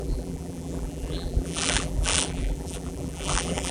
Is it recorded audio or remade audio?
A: remade